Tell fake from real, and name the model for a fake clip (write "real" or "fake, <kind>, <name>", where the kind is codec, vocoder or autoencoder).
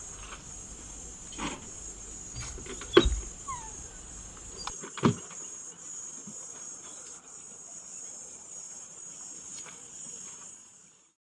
real